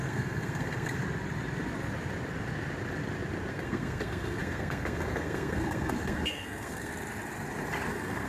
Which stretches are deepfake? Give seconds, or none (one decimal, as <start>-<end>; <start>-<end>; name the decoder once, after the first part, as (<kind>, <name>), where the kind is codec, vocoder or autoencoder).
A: 0.0-1.0 (codec, SNAC); 3.5-6.9; 7.9-8.3